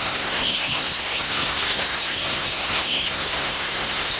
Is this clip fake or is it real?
fake